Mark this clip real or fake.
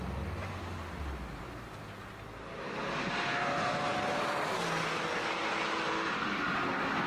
real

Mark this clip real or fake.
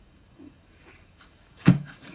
fake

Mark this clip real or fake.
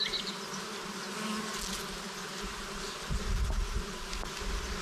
real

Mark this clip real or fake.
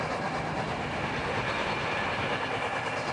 real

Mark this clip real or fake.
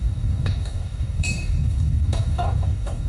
fake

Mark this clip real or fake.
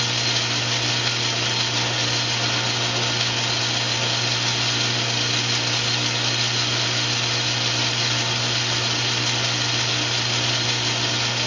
real